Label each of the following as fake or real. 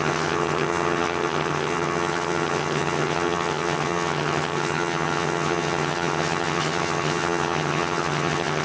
fake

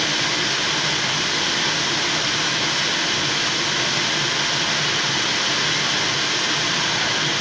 real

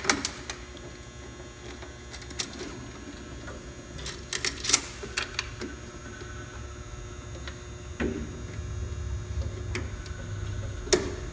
real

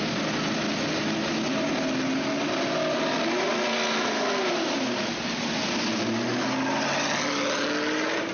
real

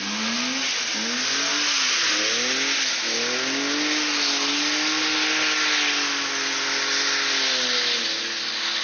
real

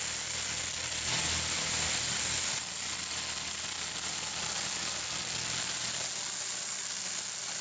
real